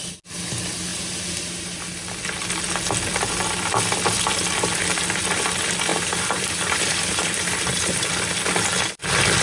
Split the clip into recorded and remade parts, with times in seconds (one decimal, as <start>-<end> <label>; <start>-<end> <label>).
0.0-0.9 recorded; 0.9-1.8 remade; 1.8-5.9 recorded; 5.9-8.1 remade; 8.1-9.4 recorded

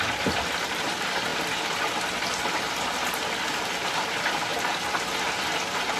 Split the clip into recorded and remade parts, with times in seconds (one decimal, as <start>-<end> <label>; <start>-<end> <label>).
0.0-4.5 remade; 4.5-5.1 recorded; 5.1-6.0 remade

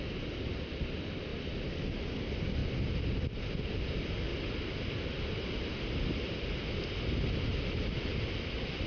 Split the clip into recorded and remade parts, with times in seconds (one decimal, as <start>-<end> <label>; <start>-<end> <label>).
0.0-1.3 remade; 1.3-2.0 recorded; 2.0-2.6 remade; 2.6-3.6 recorded; 3.6-4.3 remade; 4.3-7.6 recorded; 7.6-8.9 remade

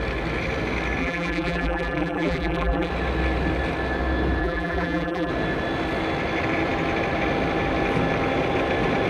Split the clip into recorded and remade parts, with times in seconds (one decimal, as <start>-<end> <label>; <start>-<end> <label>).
0.0-1.0 recorded; 1.0-2.9 remade; 2.9-4.4 recorded; 4.4-5.3 remade; 5.3-9.1 recorded

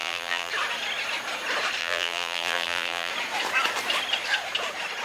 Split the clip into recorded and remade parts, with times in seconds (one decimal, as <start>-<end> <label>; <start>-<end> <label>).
0.0-0.5 remade; 0.5-1.8 recorded; 1.8-3.1 remade; 3.1-5.0 recorded

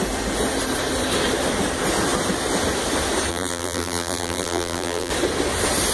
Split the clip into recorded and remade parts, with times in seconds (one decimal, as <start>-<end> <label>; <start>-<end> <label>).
0.0-3.3 recorded; 3.3-5.1 remade; 5.1-5.9 recorded